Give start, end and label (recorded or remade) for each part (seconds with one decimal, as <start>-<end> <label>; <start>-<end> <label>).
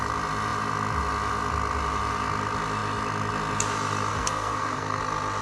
0.0-4.1 recorded; 4.1-5.0 remade; 5.0-5.4 recorded